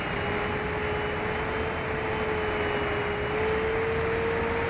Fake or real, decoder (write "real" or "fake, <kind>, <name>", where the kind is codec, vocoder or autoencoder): real